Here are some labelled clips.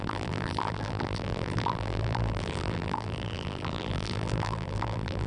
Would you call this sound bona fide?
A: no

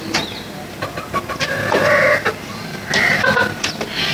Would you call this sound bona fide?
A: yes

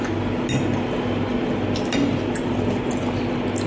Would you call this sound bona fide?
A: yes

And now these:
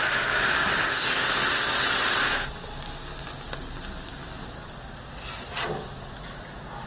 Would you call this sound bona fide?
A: yes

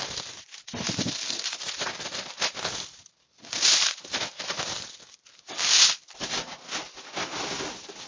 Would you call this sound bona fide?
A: no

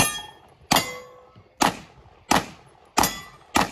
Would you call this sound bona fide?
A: yes